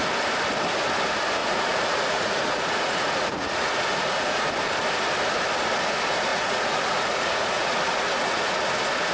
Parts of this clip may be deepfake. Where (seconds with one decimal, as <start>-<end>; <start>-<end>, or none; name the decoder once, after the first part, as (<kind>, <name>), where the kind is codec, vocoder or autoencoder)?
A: 1.4-4.5 (vocoder, Vocos); 6.3-8.6